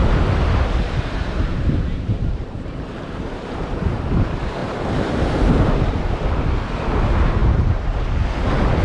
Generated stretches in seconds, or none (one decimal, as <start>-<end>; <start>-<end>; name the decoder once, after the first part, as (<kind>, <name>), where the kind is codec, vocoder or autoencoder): 0.0-4.1 (vocoder, BigVGAN v2); 4.6-6.0; 7.4-8.0